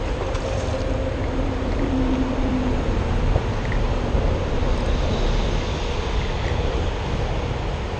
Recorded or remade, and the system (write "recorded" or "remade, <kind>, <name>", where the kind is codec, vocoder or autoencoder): recorded